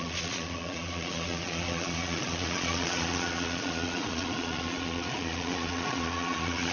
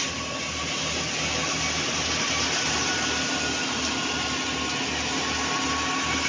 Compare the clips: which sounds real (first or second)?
second